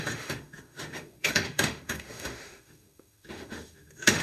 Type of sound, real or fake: fake